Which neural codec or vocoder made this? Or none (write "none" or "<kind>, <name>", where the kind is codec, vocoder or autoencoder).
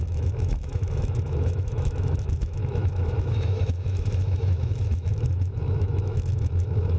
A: autoencoder, DAC-VAE